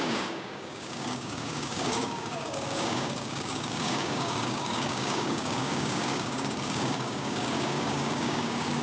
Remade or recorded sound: remade